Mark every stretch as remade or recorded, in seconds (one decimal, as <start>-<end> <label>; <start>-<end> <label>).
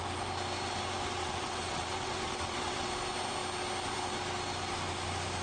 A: 0.0-1.2 recorded; 1.2-2.9 remade; 2.9-5.4 recorded